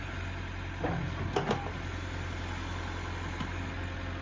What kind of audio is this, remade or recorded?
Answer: recorded